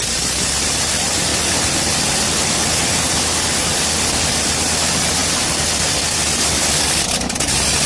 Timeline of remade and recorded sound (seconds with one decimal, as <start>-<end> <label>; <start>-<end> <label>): 0.0-7.9 recorded